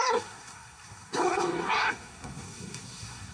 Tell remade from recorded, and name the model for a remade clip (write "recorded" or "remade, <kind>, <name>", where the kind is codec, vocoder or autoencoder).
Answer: remade, codec, SNAC